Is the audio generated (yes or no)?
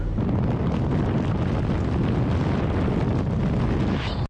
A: no